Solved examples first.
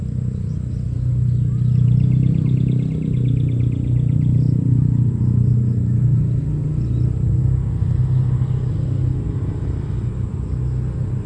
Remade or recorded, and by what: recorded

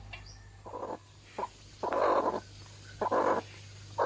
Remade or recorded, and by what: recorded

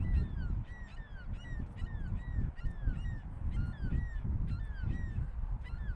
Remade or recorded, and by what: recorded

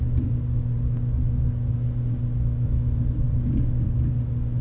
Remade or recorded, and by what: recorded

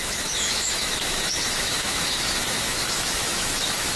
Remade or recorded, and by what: remade, autoencoder, DAC-VAE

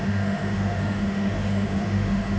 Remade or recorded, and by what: remade, autoencoder, DAC-VAE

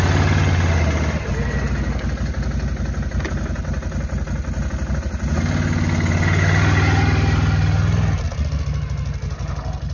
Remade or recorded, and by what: recorded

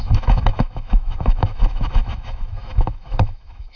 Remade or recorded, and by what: remade, autoencoder, DAC-VAE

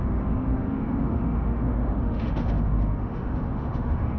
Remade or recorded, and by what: remade, autoencoder, DAC-VAE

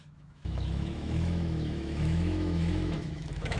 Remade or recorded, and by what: remade, autoencoder, DAC-VAE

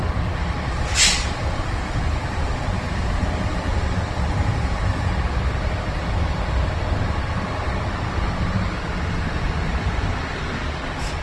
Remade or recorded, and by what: recorded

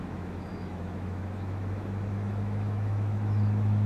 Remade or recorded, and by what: remade, autoencoder, DAC-VAE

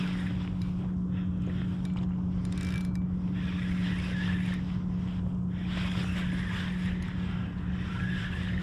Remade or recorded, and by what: recorded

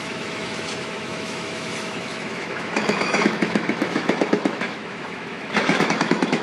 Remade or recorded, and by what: remade, autoencoder, DAC-VAE